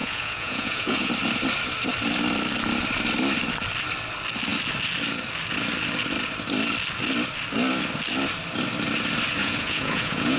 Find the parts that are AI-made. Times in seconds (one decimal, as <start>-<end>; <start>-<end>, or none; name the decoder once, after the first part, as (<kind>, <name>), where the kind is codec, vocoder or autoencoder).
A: 0.0-1.1 (vocoder, Vocos); 9.4-10.4